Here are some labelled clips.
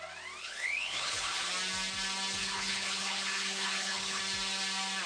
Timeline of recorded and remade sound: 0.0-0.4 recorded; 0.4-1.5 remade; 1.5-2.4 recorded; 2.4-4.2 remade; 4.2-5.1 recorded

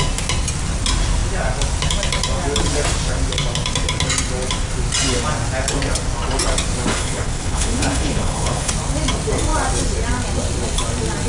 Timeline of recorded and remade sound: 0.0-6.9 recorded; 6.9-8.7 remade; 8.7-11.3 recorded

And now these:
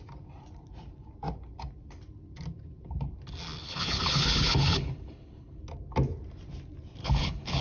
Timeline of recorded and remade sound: 0.0-3.6 recorded; 3.6-5.6 remade; 5.6-7.0 recorded; 7.0-7.6 remade

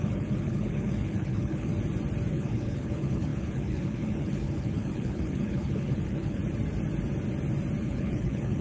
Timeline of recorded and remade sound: 0.0-1.7 remade; 1.7-2.3 recorded; 2.3-6.4 remade; 6.4-7.8 recorded; 7.8-8.6 remade